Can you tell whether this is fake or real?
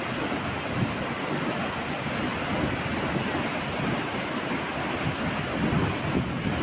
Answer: real